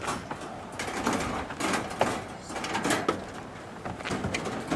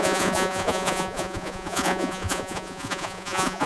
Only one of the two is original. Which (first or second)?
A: first